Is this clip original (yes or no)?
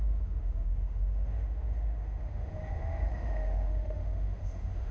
no